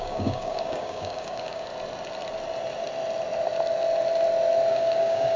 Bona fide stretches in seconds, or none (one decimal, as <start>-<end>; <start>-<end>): 1.7-4.7